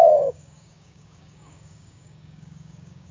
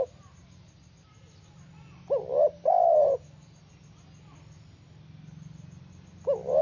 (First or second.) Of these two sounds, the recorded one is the second